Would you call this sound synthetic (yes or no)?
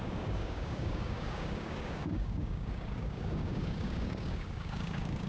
yes